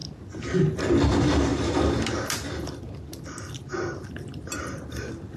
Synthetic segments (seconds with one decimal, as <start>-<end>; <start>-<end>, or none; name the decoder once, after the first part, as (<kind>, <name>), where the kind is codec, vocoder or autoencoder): none